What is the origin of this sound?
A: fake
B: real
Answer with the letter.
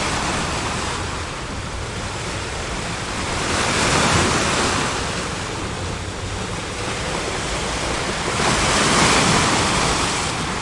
A